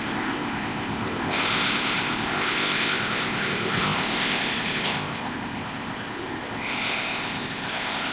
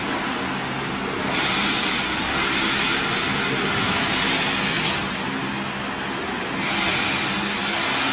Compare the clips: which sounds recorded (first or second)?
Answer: second